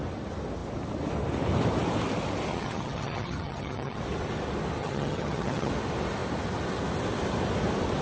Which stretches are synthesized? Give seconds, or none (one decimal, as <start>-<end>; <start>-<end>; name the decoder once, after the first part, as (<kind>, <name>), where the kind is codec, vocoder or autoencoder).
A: 2.5-4.0 (vocoder, HiFi-GAN); 4.8-5.7